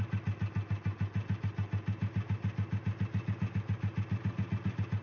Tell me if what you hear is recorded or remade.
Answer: recorded